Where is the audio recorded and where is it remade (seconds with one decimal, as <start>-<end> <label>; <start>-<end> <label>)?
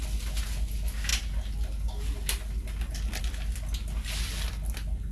0.0-5.1 recorded